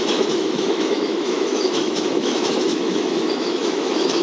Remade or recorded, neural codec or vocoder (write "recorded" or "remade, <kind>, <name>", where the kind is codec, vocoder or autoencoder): remade, autoencoder, DAC-VAE